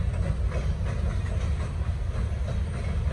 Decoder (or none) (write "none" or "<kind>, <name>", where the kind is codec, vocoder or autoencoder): none